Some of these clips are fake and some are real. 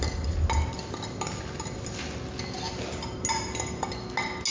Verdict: real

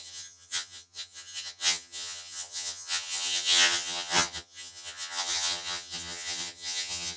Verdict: fake